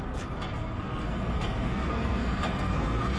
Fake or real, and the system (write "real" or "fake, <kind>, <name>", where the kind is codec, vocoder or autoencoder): fake, codec, SNAC